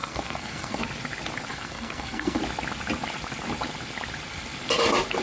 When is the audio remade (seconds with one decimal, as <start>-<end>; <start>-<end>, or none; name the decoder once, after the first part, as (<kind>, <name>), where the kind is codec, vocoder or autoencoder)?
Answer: 0.0-0.8 (codec, SNAC); 1.5-2.4